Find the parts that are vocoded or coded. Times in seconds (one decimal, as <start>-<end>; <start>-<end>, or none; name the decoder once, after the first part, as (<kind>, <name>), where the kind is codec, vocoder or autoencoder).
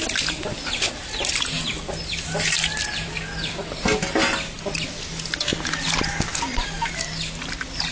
none